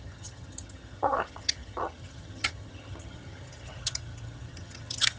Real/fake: fake